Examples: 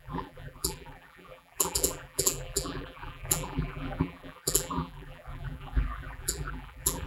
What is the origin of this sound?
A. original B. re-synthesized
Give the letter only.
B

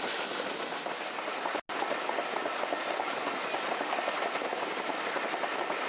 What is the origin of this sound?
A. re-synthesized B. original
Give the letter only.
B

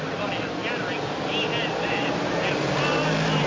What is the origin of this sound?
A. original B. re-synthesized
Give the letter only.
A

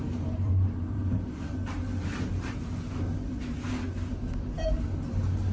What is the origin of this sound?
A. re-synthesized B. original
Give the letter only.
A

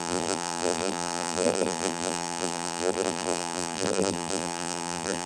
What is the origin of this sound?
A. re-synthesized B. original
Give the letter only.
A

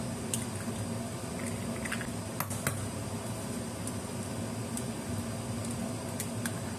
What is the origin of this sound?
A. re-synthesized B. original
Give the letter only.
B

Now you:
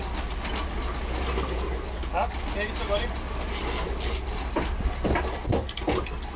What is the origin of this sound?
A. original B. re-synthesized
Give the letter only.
A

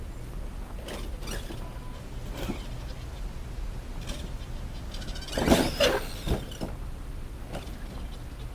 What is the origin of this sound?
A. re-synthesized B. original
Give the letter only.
B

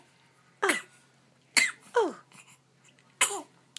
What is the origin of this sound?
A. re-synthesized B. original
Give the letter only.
B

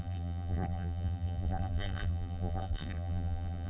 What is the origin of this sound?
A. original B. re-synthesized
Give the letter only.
B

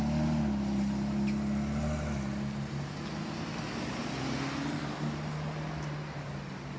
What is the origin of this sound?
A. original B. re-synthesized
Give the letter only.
A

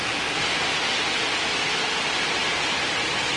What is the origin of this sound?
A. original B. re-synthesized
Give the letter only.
A